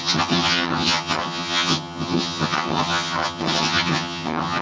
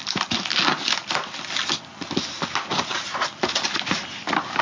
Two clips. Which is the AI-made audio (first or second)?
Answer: first